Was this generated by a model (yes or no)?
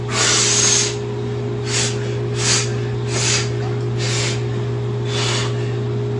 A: no